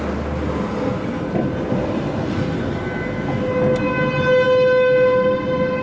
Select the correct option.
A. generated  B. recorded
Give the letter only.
B